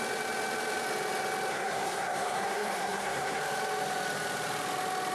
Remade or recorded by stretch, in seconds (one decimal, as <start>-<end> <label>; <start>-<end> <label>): 0.0-1.5 recorded; 1.5-3.4 remade; 3.4-5.1 recorded